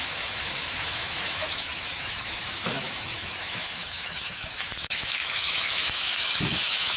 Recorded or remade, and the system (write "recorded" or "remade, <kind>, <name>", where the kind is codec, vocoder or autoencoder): remade, autoencoder, DAC-VAE